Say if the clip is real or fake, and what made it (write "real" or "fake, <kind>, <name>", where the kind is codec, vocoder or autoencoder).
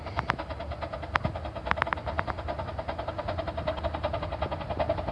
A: real